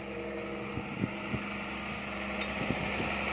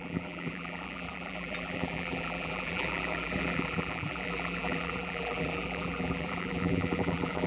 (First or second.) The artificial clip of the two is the second